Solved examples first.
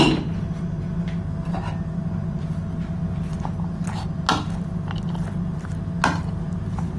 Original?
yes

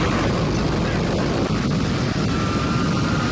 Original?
yes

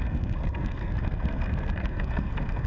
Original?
no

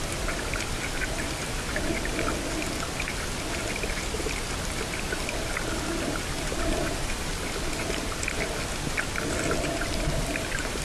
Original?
yes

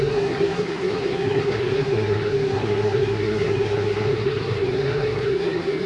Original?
no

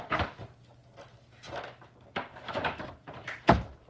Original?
yes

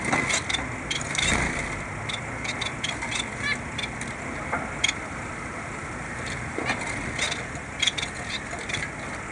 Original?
yes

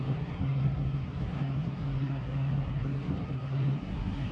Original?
no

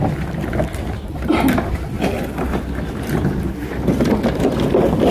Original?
yes